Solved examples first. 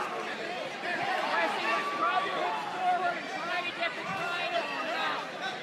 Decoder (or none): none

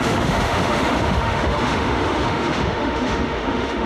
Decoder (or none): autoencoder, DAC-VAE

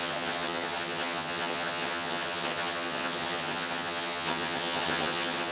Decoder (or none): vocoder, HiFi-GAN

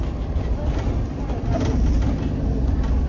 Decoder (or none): none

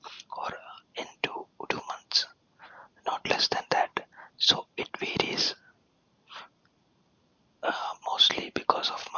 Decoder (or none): vocoder, BigVGAN v2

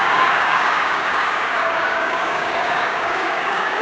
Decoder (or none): codec, DAC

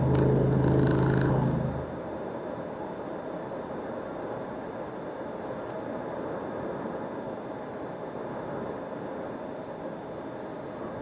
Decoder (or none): none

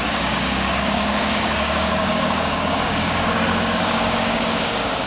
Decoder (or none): codec, DAC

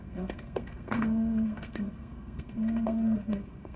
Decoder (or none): codec, SNAC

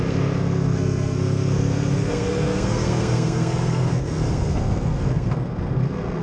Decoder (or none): codec, SNAC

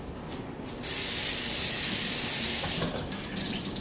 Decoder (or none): none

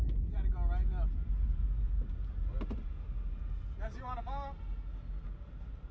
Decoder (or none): none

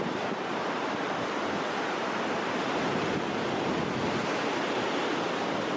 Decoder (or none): none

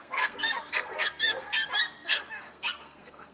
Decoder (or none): codec, SNAC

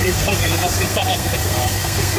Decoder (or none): codec, SNAC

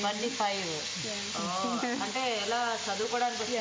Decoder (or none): none